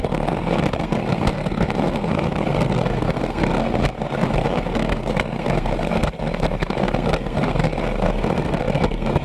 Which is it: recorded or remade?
remade